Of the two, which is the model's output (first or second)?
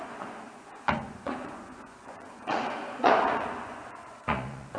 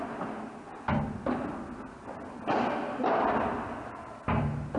first